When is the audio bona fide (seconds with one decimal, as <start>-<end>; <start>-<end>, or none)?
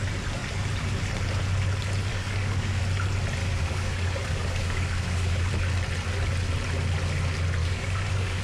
0.0-2.1; 2.8-3.4; 5.5-7.6